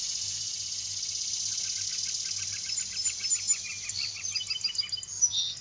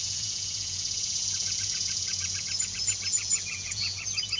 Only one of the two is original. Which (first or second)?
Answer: first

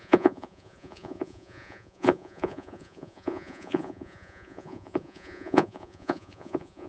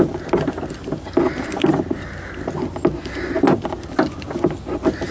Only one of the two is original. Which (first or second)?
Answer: second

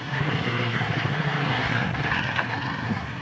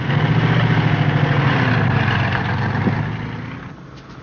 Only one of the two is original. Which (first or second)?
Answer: second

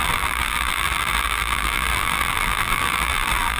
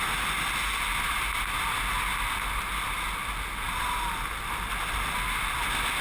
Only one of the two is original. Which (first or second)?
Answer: second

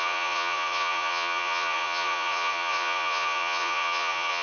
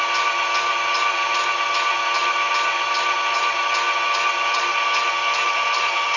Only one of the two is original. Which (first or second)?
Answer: second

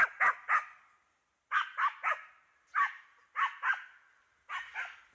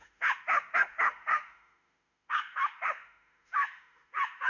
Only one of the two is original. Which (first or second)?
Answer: first